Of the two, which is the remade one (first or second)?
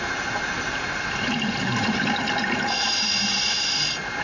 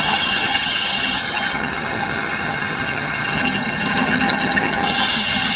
second